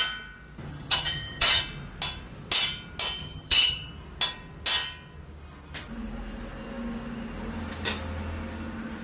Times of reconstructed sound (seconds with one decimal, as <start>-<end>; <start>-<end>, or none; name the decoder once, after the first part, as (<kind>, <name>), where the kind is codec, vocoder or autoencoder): 0.7-1.6 (vocoder, HiFi-GAN); 3.2-3.9

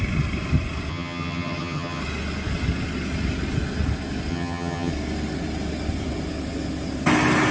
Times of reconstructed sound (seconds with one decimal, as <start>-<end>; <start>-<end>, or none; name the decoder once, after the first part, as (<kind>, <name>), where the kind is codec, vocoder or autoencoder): 0.9-2.0 (vocoder, HiFi-GAN); 4.3-4.9

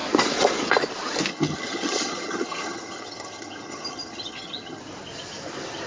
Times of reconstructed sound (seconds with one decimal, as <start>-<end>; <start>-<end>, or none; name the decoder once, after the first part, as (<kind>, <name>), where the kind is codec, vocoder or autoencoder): 1.3-4.8 (vocoder, HiFi-GAN)

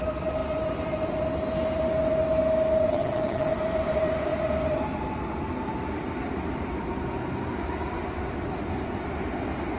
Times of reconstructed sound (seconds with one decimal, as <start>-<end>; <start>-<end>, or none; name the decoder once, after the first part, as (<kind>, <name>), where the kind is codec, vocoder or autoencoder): 2.9-3.5 (vocoder, HiFi-GAN)